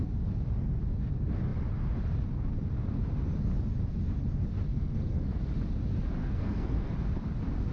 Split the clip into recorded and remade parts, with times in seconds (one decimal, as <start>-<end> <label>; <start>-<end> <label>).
0.0-4.7 recorded; 4.7-5.4 remade; 5.4-6.2 recorded; 6.2-6.9 remade; 6.9-7.7 recorded